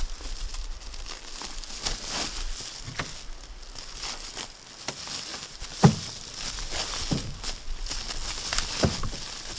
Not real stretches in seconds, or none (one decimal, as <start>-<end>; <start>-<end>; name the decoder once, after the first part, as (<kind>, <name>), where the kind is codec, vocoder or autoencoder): 5.3-5.8 (vocoder, BigVGAN v2)